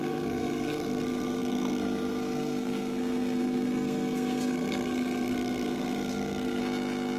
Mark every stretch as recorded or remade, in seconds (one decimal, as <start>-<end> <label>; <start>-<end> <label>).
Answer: 0.0-6.6 remade; 6.6-7.2 recorded